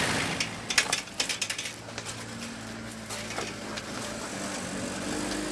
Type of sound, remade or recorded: recorded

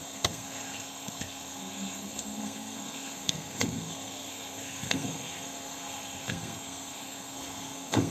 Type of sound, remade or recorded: remade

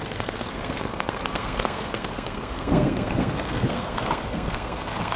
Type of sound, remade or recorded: remade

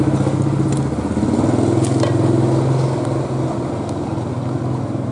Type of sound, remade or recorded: recorded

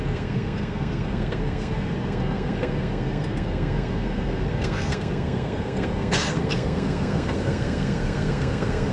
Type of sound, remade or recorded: remade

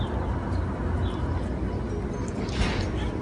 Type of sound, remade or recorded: recorded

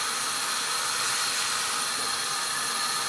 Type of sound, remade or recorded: recorded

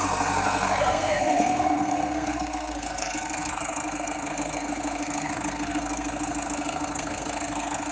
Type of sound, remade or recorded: remade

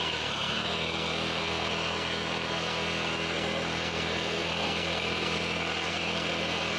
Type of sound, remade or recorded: remade